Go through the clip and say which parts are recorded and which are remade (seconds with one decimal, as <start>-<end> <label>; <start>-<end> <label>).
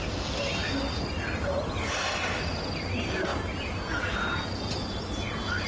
0.0-5.7 recorded